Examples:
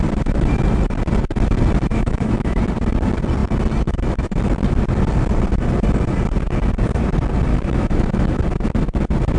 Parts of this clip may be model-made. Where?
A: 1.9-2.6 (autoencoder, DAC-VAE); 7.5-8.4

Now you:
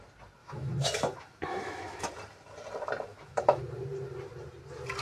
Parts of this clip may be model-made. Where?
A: 0.4-2.1 (autoencoder, DAC-VAE); 3.1-3.6

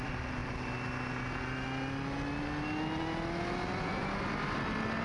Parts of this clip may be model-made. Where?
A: none

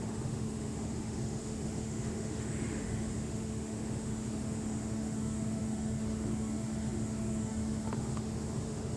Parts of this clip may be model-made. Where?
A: 0.0-9.0 (autoencoder, DAC-VAE)

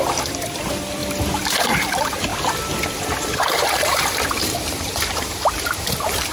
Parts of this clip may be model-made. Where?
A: 0.0-1.0 (vocoder, BigVGAN v2); 1.5-2.3; 3.4-6.3

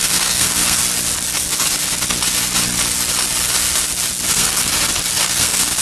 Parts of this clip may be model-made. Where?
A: 0.0-0.8 (codec, SNAC); 4.3-4.7; 5.2-5.8

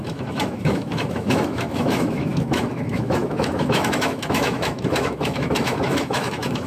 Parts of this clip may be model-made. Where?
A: 0.0-6.7 (autoencoder, DAC-VAE)

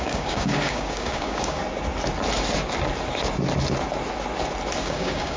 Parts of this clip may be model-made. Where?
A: 0.0-1.6 (codec, DAC); 4.8-5.4